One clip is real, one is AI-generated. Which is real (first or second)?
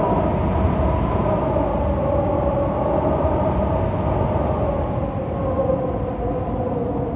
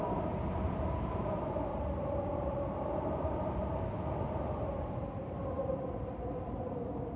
first